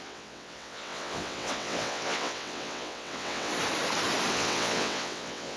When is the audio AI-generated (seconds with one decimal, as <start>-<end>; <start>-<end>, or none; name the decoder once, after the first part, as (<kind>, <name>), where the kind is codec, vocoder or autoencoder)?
0.0-3.5 (vocoder, WaveNeXt); 4.3-5.6